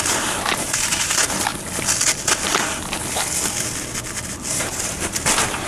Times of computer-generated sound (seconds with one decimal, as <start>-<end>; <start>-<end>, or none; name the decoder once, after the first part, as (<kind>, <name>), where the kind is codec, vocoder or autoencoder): 0.0-1.5 (vocoder, BigVGAN v2); 4.5-5.7

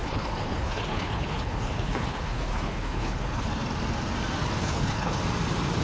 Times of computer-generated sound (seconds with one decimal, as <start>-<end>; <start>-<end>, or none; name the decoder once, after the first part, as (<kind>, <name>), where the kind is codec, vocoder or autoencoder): 0.0-3.5 (codec, HILCodec); 4.6-5.2

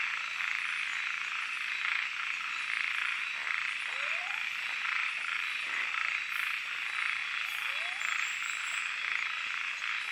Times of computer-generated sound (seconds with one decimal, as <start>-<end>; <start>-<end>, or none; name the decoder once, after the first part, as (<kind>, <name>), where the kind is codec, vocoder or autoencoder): none

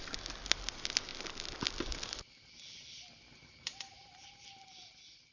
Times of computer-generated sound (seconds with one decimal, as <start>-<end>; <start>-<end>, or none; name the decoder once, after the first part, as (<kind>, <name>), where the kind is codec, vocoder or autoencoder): none

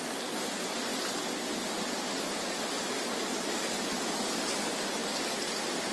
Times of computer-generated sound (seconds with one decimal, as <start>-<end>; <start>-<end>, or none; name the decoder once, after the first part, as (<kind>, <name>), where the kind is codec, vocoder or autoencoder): none

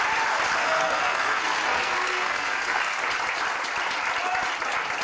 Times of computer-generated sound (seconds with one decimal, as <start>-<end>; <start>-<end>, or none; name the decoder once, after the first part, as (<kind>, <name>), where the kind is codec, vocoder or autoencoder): 0.6-3.0 (codec, SNAC)